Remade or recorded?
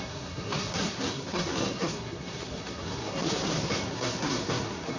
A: remade